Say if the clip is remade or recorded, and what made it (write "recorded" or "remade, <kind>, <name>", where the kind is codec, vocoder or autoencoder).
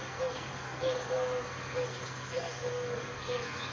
remade, codec, SNAC